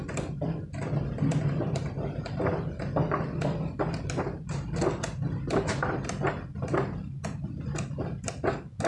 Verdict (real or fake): real